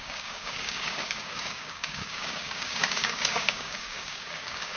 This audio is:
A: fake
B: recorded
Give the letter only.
A